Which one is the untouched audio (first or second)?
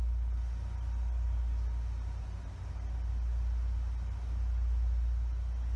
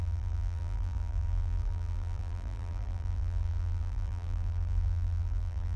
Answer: first